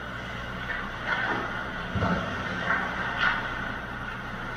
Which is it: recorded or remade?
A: recorded